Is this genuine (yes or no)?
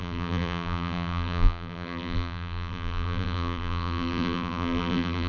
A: no